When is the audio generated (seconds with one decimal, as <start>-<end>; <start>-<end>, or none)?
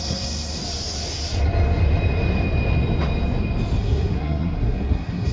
0.0-0.6; 3.8-5.3